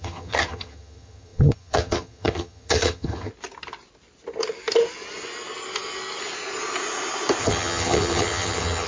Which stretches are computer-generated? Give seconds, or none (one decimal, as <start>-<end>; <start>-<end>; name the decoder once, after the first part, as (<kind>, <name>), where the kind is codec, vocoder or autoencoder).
0.0-3.3 (vocoder, HiFi-GAN); 7.4-8.9